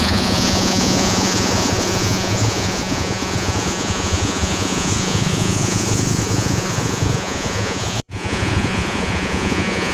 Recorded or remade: remade